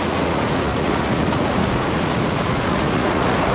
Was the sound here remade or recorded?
remade